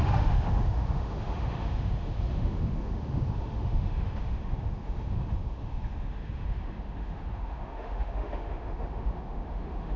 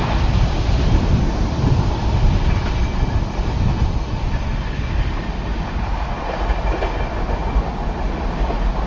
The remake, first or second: first